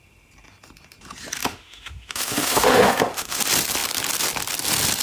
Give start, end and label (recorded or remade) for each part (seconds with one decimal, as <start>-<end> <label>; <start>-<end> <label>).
0.0-1.4 recorded; 1.4-3.4 remade; 3.4-5.0 recorded